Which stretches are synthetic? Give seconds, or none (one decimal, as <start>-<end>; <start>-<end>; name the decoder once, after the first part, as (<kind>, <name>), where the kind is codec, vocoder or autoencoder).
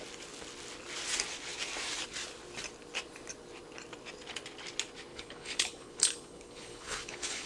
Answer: 5.1-7.5 (codec, HILCodec)